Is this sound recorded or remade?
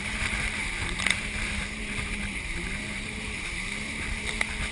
remade